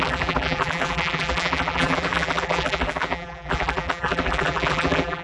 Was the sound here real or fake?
fake